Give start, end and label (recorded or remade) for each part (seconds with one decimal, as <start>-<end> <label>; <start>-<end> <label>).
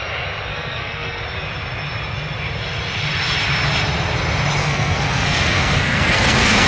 0.0-0.5 recorded; 0.5-1.2 remade; 1.2-4.6 recorded; 4.6-6.7 remade